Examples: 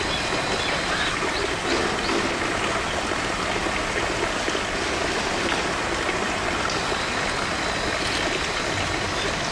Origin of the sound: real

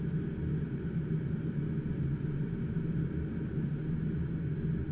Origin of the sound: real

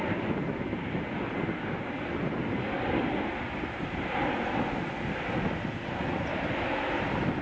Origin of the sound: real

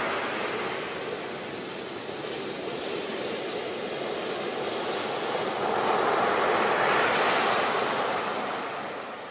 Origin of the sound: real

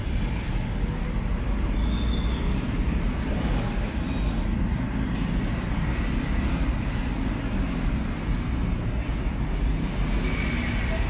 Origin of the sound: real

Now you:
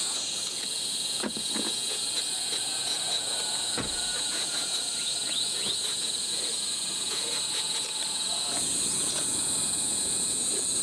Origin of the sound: fake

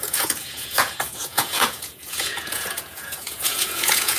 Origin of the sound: fake